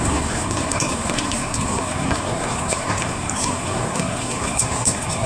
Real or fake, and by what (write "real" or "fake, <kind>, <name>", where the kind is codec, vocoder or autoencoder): fake, codec, SNAC